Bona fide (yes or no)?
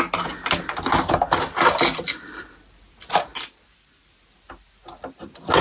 yes